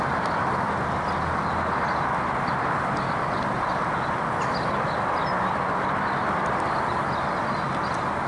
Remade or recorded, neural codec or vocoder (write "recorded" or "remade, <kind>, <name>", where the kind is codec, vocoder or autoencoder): recorded